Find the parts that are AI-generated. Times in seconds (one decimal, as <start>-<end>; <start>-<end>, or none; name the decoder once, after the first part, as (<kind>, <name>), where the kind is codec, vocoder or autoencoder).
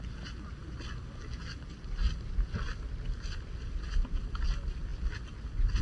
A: none